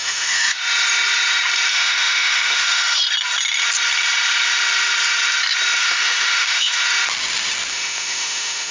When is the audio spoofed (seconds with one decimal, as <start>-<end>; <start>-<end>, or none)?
0.0-0.6; 1.7-3.0; 5.8-6.8; 7.7-8.7